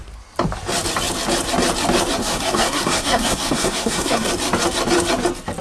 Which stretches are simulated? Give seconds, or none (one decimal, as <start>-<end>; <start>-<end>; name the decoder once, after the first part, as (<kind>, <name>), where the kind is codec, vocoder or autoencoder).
2.2-4.3 (codec, SNAC)